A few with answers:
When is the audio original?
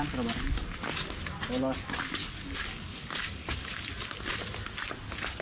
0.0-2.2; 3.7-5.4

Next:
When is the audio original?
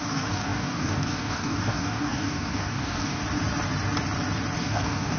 3.2-4.6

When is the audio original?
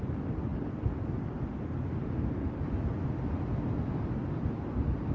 0.0-5.1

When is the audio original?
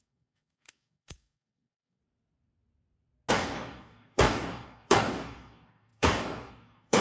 2.0-3.3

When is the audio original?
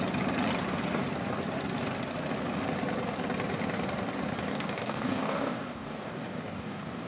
0.0-4.5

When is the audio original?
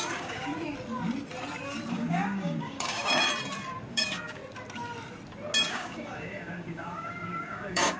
0.5-1.9; 3.1-3.9; 4.4-5.7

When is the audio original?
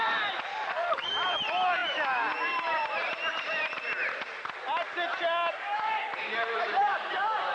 0.0-0.5; 1.1-7.5